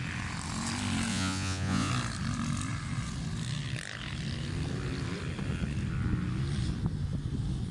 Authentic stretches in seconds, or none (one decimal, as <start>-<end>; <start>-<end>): 0.0-1.1; 1.9-7.7